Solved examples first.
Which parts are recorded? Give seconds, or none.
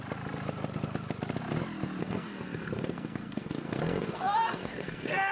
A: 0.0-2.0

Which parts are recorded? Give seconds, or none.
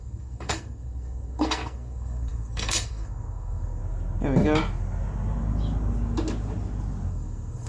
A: 3.8-7.1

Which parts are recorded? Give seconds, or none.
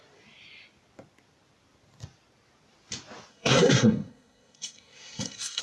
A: 0.0-3.3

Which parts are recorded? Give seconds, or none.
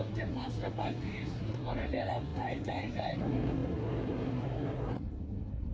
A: none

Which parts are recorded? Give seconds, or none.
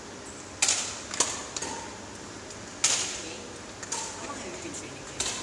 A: 0.0-5.4